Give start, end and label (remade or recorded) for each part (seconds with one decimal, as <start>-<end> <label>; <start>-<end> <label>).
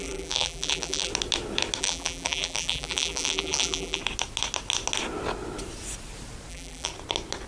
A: 0.0-1.1 remade; 1.1-1.8 recorded; 1.8-4.0 remade; 4.0-6.5 recorded; 6.5-6.9 remade; 6.9-7.5 recorded